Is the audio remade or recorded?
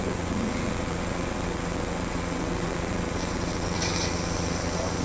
remade